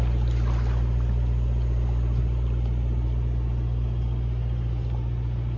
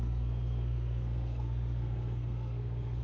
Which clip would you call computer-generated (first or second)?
second